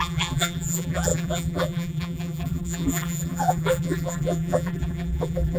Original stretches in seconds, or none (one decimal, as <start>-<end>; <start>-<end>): none